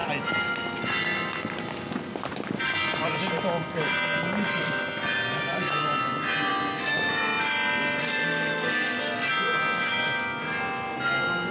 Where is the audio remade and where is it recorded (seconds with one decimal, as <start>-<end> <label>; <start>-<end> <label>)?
0.0-8.0 recorded; 8.0-9.3 remade; 9.3-11.5 recorded